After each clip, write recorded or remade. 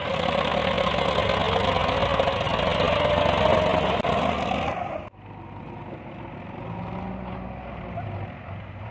recorded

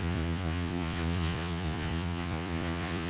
remade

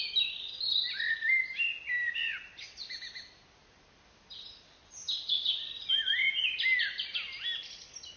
recorded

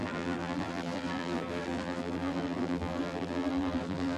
remade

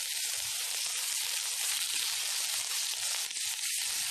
remade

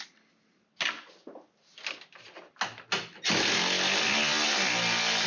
recorded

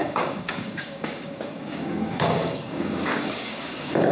remade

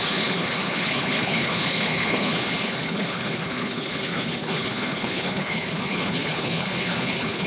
remade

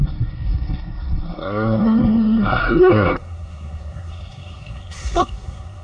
remade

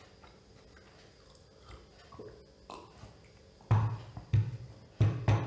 recorded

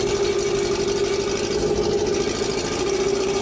recorded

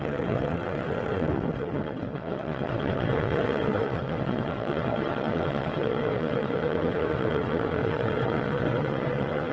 remade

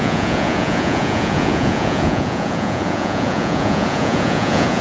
remade